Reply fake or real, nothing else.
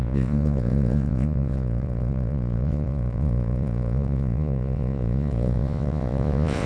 fake